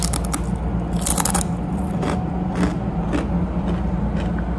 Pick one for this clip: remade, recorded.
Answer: recorded